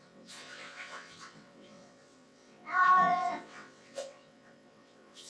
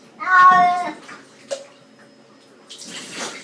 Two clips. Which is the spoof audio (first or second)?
first